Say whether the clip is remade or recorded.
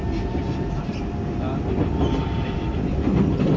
recorded